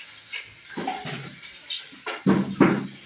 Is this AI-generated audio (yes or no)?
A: no